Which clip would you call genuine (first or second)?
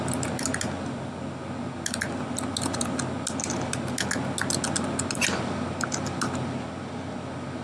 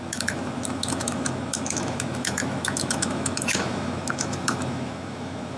first